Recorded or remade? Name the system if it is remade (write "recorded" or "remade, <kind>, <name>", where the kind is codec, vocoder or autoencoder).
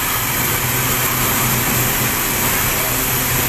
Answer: recorded